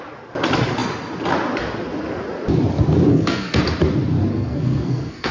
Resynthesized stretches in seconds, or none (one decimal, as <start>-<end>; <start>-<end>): 3.1-3.6; 4.3-5.3